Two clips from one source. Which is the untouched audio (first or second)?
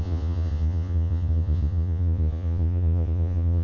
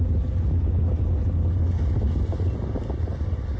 second